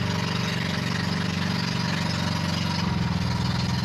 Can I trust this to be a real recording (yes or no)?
yes